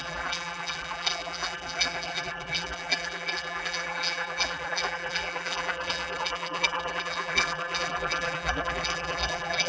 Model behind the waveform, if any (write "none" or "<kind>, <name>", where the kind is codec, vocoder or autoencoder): vocoder, BigVGAN v2